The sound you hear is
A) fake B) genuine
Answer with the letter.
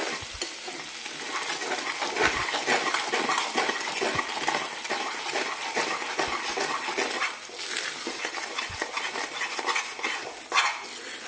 B